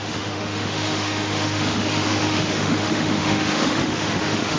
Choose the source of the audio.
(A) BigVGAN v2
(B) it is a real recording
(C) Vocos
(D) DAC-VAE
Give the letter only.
D